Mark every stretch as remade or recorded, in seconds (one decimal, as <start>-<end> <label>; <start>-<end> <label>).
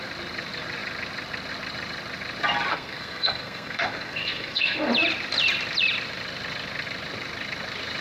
0.0-2.7 recorded; 2.7-4.9 remade; 4.9-8.0 recorded